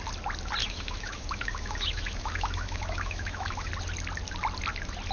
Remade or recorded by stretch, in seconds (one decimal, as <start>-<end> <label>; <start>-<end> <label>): 0.0-0.6 recorded; 0.6-3.7 remade; 3.7-5.1 recorded